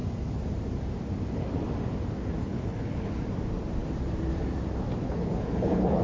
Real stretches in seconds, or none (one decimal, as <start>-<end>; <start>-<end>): 0.0-2.4; 3.2-5.0